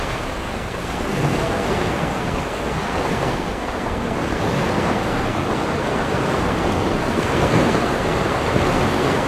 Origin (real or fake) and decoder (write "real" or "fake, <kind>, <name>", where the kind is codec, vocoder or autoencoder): fake, codec, SNAC